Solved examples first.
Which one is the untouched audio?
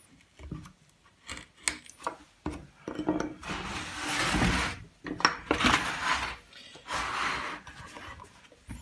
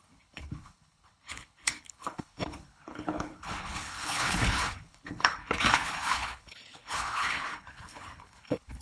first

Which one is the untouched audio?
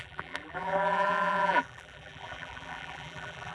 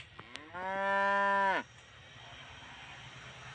second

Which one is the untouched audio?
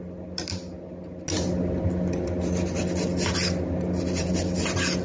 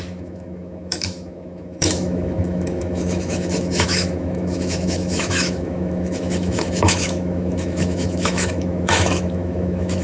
first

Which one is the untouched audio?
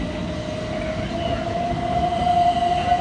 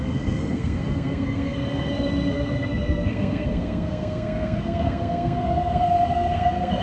first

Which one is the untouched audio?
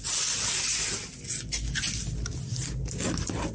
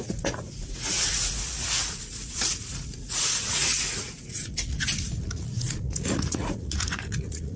first